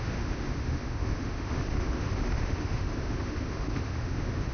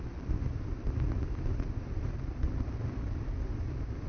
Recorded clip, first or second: second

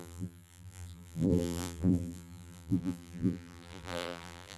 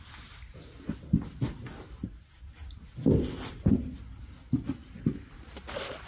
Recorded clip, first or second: second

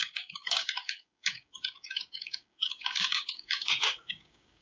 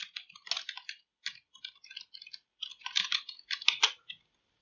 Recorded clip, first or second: second